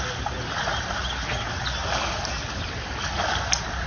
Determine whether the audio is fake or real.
real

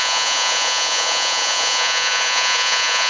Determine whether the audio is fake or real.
fake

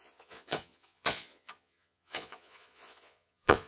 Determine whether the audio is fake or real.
fake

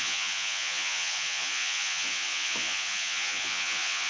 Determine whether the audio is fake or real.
fake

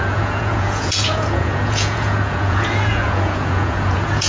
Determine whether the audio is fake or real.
fake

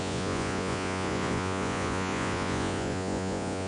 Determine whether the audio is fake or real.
fake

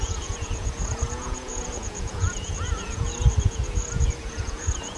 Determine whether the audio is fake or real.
fake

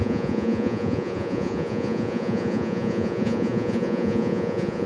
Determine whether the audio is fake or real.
fake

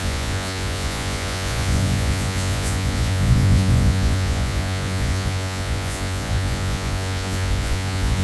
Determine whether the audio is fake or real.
fake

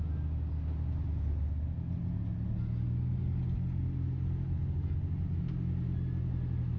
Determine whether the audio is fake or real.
real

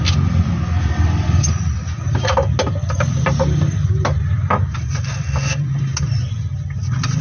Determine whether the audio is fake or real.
real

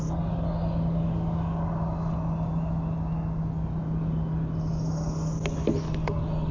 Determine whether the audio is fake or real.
real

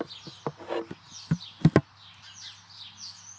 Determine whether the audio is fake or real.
real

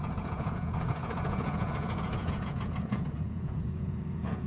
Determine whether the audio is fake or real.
fake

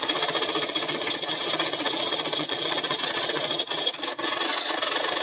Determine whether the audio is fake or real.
fake